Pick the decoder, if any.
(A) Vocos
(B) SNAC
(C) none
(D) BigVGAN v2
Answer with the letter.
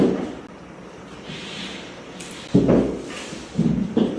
C